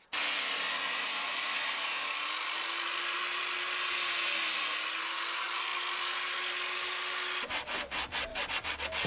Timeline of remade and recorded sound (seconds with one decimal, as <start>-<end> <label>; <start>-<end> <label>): 0.0-9.1 recorded